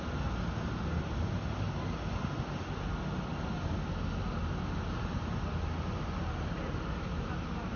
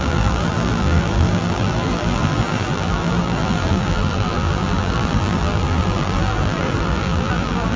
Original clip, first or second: first